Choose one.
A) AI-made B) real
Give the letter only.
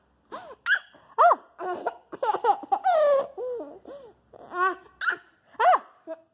B